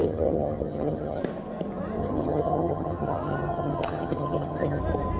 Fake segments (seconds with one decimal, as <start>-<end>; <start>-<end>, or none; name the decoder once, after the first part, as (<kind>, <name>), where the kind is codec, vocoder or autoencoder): 0.0-1.2 (vocoder, HiFi-GAN); 2.0-4.8